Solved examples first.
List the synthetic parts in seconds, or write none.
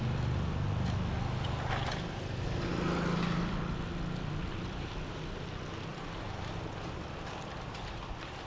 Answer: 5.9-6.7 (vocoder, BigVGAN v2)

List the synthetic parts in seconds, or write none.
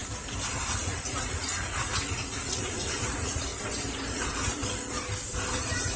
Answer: 0.8-3.5 (vocoder, Vocos); 4.1-4.6; 5.5-6.0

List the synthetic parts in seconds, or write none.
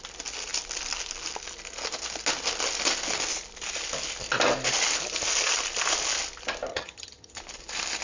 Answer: 6.7-7.4 (vocoder, HiFi-GAN)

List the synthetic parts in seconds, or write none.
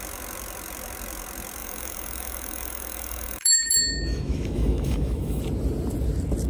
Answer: 1.6-5.4 (autoencoder, DAC-VAE)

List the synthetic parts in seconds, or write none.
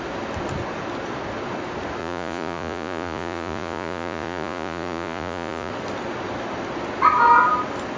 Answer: 2.0-5.7 (vocoder, Vocos)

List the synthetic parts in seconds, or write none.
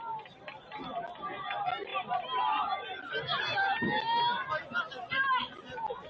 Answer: none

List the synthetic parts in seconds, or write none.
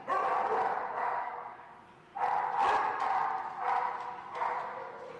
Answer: 1.2-1.7 (codec, SNAC)